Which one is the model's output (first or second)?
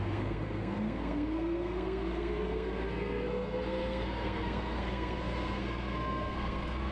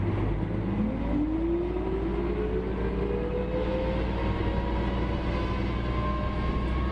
first